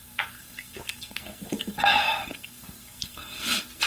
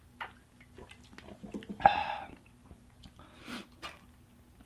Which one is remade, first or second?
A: first